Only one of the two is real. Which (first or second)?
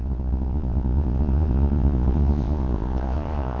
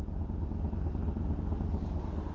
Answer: second